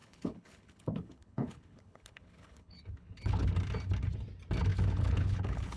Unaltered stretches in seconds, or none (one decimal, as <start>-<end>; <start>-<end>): 3.5-4.7